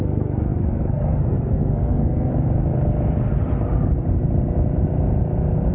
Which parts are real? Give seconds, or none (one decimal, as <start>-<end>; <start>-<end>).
2.3-5.7